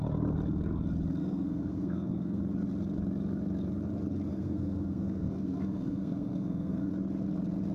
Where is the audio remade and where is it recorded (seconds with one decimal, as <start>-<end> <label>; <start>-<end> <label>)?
0.0-1.2 recorded; 1.2-2.4 remade; 2.4-4.3 recorded; 4.3-6.9 remade; 6.9-7.7 recorded